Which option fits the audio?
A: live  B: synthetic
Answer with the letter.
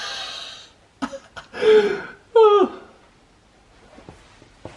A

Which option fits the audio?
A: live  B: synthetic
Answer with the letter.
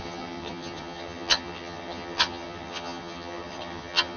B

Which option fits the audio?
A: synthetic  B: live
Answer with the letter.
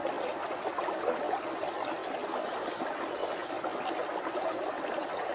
B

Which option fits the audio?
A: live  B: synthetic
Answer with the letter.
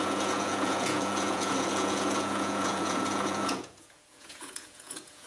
B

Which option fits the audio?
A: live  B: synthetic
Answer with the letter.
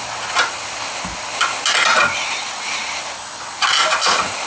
A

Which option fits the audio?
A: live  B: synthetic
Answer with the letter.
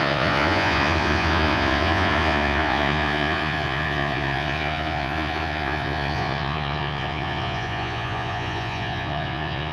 B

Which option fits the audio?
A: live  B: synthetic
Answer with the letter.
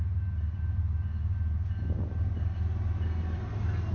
A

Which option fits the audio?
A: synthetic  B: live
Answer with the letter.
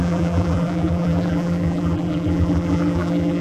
A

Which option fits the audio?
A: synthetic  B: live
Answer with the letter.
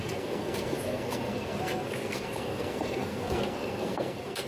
A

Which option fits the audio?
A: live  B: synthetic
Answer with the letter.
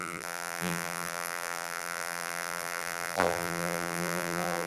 B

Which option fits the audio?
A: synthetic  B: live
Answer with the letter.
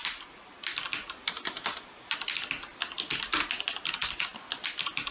B